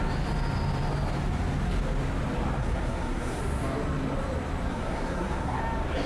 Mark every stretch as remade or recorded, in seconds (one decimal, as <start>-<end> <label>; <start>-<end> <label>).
0.0-2.6 recorded; 2.6-3.4 remade; 3.4-4.7 recorded; 4.7-5.6 remade; 5.6-6.1 recorded